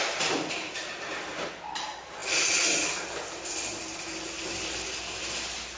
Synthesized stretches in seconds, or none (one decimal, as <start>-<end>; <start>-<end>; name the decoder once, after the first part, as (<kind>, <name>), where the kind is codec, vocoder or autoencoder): none